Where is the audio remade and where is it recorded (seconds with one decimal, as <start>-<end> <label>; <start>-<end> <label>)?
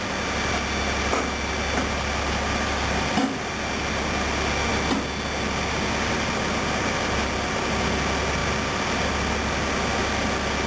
0.0-10.7 recorded